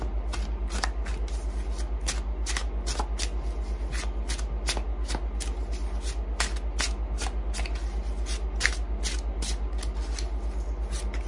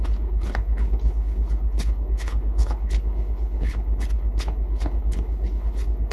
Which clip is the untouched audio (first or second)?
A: first